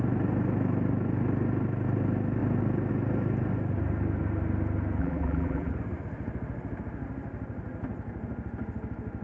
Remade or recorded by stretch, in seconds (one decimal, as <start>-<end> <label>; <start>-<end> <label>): 0.0-5.0 recorded; 5.0-5.7 remade; 5.7-9.2 recorded